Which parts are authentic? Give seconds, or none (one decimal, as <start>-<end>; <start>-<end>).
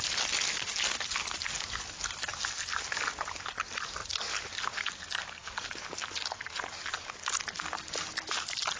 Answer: 0.0-4.0; 4.9-5.4; 7.8-8.8